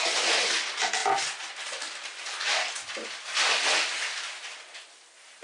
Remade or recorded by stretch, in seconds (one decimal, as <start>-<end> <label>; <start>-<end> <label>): 0.0-5.4 recorded